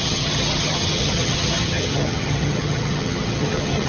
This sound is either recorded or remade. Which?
remade